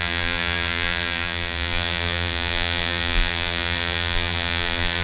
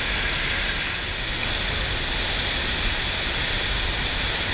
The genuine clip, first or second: second